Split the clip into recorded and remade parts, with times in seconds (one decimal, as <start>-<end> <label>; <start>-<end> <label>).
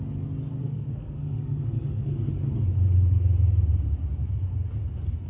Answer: 0.0-0.6 recorded; 0.6-2.3 remade; 2.3-5.3 recorded